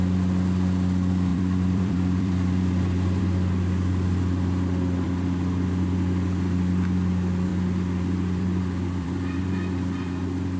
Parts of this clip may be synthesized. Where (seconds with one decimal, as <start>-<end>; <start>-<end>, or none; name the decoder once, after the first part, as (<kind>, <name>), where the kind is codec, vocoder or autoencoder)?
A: 1.3-3.2 (vocoder, BigVGAN v2); 7.5-9.4